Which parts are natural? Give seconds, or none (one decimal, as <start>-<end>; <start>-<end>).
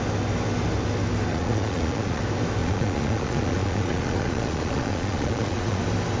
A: 0.0-1.3; 2.2-2.6; 5.8-6.2